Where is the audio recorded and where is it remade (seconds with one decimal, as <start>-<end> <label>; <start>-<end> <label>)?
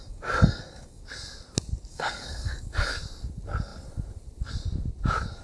0.0-1.0 remade; 1.0-1.9 recorded; 1.9-2.9 remade; 2.9-5.4 recorded